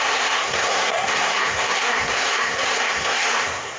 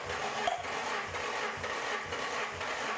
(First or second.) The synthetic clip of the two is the first